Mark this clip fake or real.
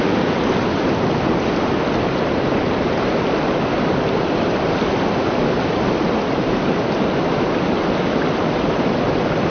real